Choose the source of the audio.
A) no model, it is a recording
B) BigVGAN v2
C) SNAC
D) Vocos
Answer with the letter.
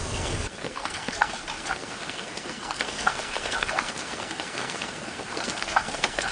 C